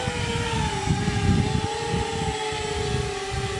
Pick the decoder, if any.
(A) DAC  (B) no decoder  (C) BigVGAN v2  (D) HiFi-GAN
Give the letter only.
B